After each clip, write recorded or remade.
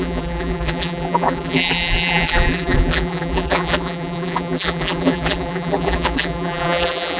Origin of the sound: remade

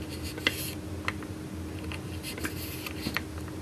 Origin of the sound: recorded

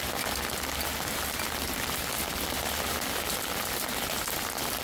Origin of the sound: recorded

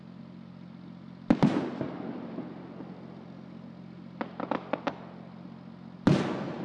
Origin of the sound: recorded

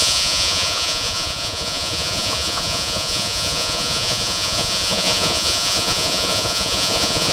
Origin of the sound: remade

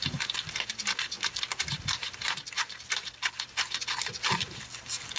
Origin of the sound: recorded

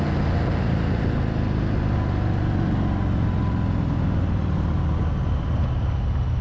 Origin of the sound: recorded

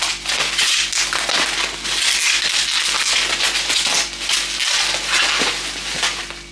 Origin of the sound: recorded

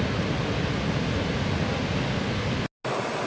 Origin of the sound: recorded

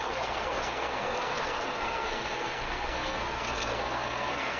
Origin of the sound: remade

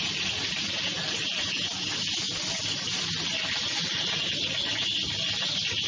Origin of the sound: recorded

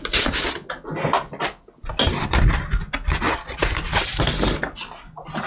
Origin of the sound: recorded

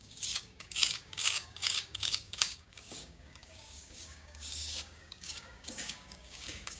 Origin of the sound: remade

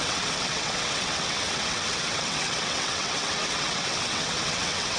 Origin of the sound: remade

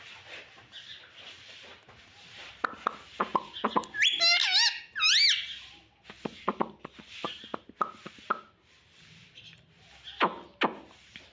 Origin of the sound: recorded